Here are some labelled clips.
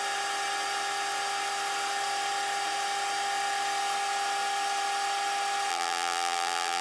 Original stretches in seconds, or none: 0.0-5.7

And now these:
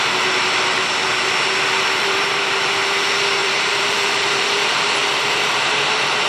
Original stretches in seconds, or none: 0.0-2.0; 2.7-3.4